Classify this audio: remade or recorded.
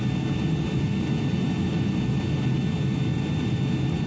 recorded